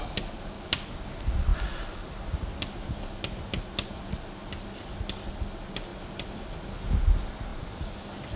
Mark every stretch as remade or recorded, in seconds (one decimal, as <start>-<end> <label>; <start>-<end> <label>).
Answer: 0.0-5.9 recorded; 5.9-6.4 remade; 6.4-7.5 recorded; 7.5-8.0 remade; 8.0-8.4 recorded